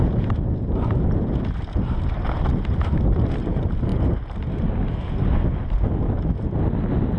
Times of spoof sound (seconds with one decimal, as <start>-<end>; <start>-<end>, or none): none